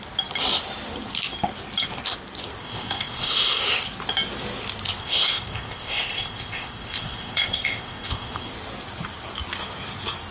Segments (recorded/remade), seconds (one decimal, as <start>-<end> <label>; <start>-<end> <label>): 0.0-2.6 recorded; 2.6-3.6 remade; 3.6-5.0 recorded; 5.0-8.5 remade; 8.5-10.3 recorded